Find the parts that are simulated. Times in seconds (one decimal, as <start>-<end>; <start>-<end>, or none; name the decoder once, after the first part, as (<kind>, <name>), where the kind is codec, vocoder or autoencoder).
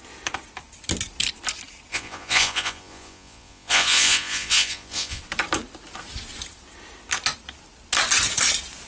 1.9-5.2 (vocoder, Vocos)